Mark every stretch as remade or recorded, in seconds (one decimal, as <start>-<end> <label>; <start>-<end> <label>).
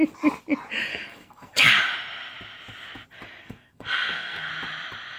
0.0-0.9 recorded; 0.9-1.7 remade; 1.7-3.4 recorded; 3.4-4.5 remade; 4.5-5.2 recorded